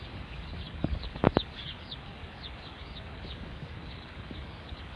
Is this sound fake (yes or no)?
yes